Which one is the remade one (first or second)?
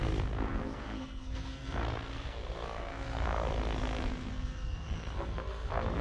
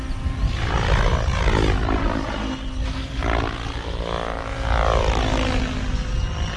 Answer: first